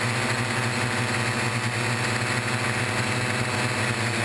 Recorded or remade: recorded